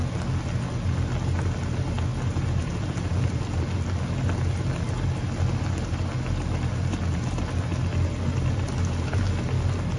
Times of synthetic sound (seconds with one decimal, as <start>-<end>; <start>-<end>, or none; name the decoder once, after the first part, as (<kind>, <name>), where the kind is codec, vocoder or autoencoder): none